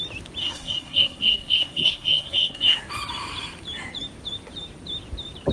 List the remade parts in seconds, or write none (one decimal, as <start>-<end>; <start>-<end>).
0.4-2.8

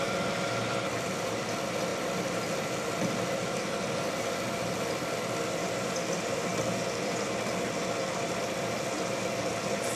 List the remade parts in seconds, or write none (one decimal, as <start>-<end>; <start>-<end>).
none

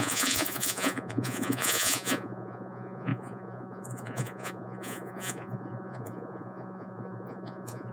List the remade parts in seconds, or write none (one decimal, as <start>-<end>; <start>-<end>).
0.0-7.9

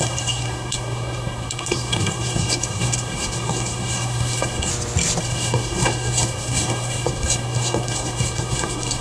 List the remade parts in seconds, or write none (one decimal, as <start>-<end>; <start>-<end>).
0.0-4.7; 5.2-9.0

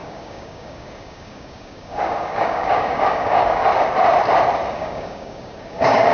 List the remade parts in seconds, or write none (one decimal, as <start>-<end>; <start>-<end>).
0.0-3.7; 4.7-6.1

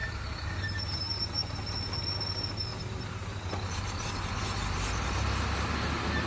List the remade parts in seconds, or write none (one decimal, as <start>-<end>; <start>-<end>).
0.0-1.2; 2.7-5.4